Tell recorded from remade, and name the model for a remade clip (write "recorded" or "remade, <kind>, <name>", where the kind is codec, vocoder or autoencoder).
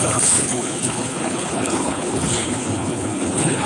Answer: remade, codec, HILCodec